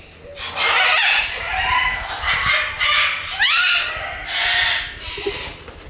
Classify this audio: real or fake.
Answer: real